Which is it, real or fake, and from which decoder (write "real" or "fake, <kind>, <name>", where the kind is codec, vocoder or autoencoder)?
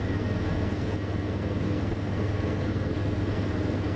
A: fake, codec, SNAC